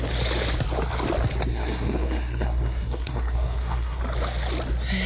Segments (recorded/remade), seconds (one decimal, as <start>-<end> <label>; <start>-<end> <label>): 0.0-1.5 recorded; 1.5-4.0 remade; 4.0-5.1 recorded